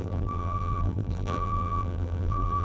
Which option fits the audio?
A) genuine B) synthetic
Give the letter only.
B